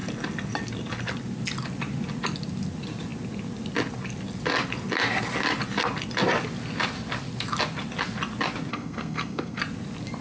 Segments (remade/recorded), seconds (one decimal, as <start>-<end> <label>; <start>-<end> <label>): 0.0-8.7 recorded; 8.7-9.6 remade; 9.6-10.2 recorded